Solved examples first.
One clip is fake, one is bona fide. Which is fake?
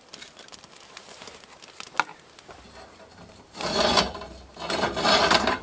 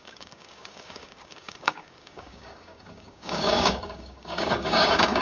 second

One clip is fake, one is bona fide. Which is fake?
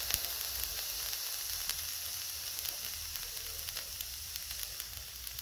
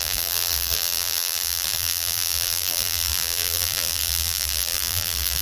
second